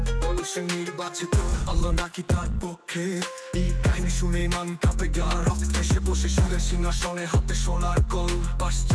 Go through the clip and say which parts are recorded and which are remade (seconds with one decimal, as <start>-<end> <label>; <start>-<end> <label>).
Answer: 0.0-1.5 recorded; 1.5-2.8 remade; 2.8-8.9 recorded